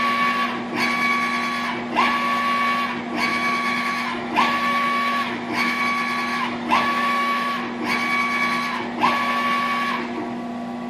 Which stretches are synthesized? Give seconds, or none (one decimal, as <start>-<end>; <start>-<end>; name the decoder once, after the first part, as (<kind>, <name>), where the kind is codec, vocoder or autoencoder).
3.3-5.8 (autoencoder, DAC-VAE); 6.3-7.6